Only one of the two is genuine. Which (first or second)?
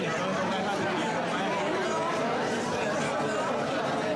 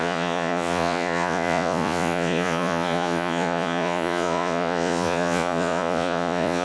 first